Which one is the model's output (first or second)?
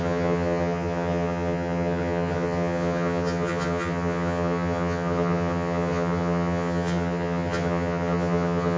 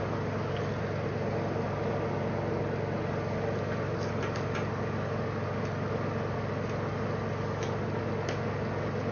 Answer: first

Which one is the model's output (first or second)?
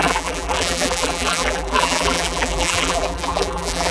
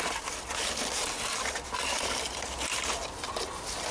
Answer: first